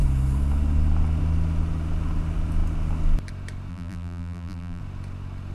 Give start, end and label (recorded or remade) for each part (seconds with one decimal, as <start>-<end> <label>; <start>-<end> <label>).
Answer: 0.0-3.7 recorded; 3.7-4.8 remade; 4.8-5.5 recorded